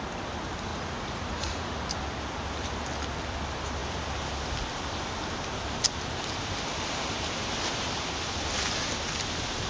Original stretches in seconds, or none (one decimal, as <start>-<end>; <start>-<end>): 0.0-0.7; 1.9-9.7